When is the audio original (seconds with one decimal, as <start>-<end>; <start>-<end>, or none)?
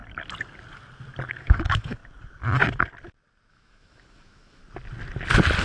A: 0.0-1.3; 2.0-3.5; 4.6-5.6